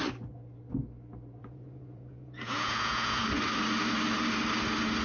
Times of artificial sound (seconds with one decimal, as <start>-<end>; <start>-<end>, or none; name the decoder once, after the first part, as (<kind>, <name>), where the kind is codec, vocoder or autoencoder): 1.4-3.2 (vocoder, Vocos)